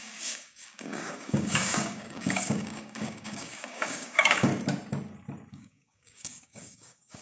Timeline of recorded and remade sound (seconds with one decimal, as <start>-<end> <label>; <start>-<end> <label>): 0.0-4.5 remade; 4.5-5.5 recorded; 5.5-7.2 remade